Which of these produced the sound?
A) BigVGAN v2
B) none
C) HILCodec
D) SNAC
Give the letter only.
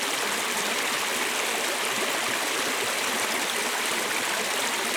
B